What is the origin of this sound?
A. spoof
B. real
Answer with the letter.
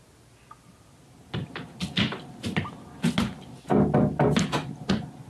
B